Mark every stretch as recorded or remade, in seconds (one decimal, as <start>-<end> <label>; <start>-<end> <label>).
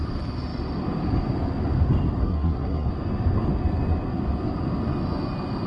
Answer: 0.0-2.2 recorded; 2.2-2.9 remade; 2.9-5.7 recorded